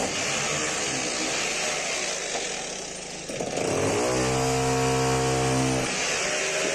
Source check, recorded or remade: recorded